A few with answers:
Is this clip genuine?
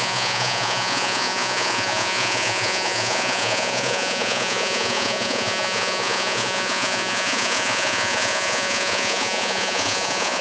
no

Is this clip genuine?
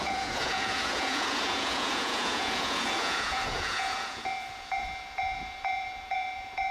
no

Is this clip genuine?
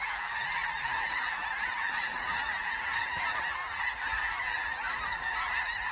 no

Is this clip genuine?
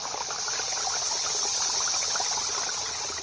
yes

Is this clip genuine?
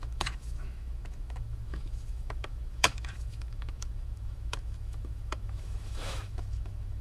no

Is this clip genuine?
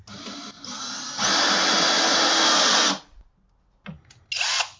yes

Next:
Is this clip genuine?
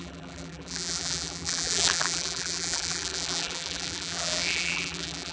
no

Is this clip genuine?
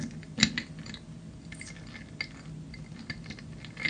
yes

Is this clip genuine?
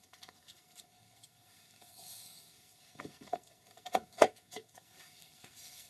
no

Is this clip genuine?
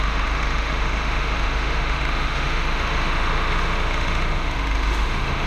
no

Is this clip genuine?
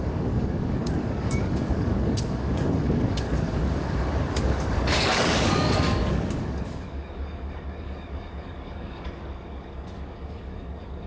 no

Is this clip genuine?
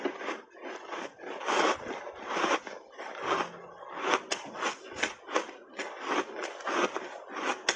yes